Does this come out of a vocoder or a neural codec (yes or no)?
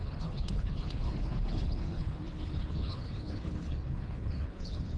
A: yes